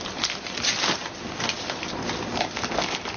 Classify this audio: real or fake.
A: fake